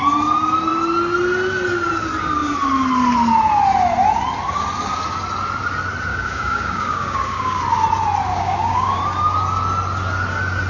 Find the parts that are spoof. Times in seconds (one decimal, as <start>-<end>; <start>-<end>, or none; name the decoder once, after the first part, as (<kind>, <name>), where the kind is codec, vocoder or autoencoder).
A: 6.1-7.6 (codec, DAC); 8.3-9.0